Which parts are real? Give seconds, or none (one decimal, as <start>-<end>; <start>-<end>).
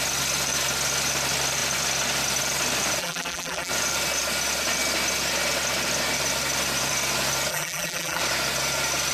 0.0-3.0; 3.7-7.5; 8.2-9.1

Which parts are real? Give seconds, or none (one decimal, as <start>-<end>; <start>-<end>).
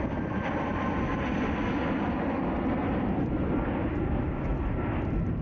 0.0-0.7; 3.9-4.5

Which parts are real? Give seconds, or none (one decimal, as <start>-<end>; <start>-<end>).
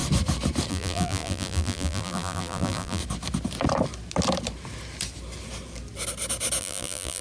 0.0-0.7; 3.0-6.6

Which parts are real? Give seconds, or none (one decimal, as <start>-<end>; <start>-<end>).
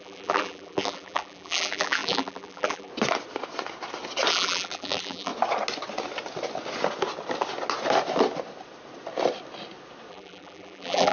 2.9-4.3; 5.3-10.1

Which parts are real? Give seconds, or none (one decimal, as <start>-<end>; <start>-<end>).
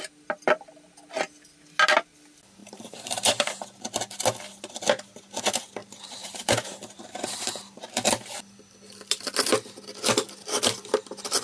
0.0-2.6; 3.5-5.8; 7.8-11.4